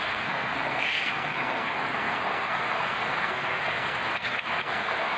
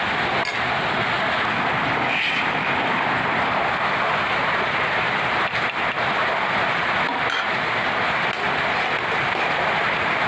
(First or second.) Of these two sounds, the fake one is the first